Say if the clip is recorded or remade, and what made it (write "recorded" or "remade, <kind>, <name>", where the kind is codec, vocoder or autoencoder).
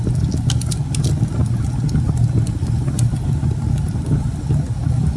recorded